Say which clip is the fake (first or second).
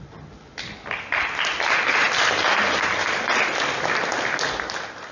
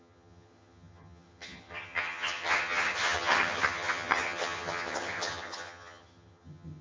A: second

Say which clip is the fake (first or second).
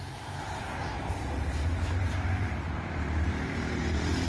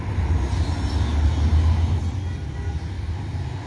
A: first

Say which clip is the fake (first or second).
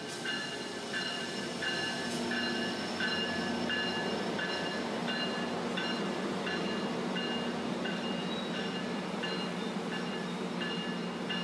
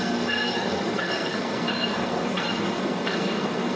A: second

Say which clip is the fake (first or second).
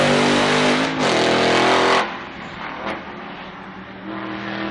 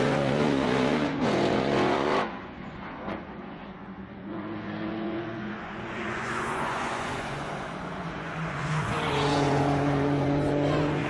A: second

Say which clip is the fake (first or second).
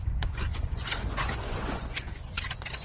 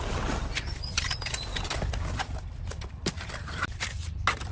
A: first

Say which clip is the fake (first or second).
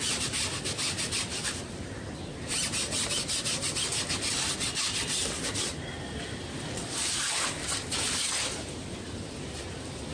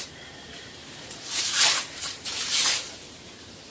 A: second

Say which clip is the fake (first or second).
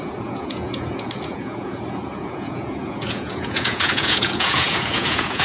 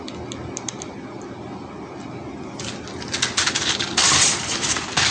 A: first